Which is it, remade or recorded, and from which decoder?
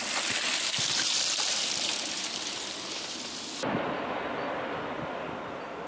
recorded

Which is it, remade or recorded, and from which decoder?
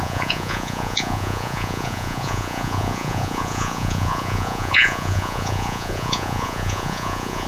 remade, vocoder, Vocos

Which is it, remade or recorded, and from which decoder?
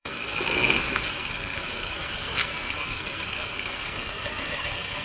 remade, codec, SNAC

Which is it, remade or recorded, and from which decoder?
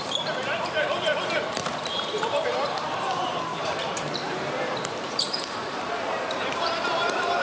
remade, vocoder, BigVGAN v2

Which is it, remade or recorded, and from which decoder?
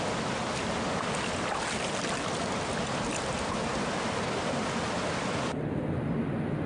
recorded